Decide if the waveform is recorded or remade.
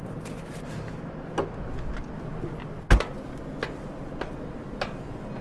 recorded